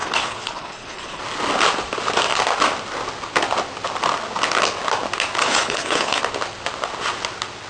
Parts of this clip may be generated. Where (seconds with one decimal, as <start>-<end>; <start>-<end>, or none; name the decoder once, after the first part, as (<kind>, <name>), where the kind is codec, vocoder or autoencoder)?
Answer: 0.0-1.2 (codec, HILCodec); 5.4-6.2